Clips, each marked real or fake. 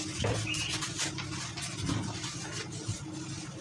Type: real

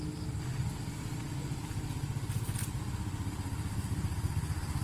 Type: real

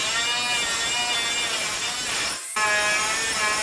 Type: real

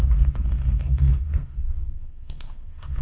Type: fake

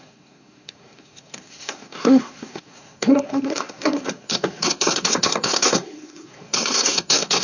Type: fake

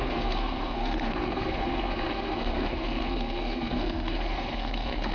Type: fake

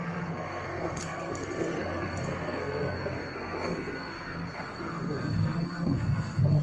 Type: fake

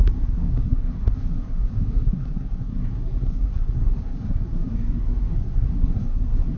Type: fake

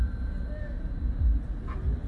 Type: real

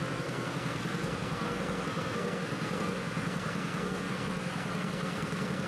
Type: fake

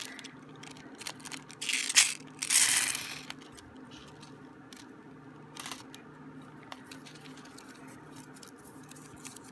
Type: real